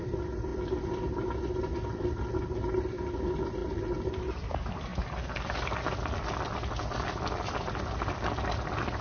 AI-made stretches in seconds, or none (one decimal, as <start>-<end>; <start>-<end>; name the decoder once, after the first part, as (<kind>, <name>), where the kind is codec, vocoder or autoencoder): none